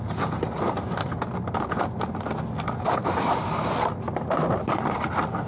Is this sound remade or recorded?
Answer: recorded